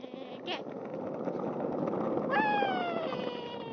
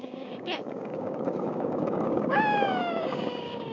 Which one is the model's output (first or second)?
second